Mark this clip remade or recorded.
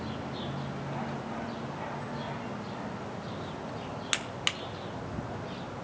recorded